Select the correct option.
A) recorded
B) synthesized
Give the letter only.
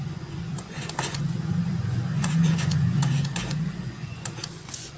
B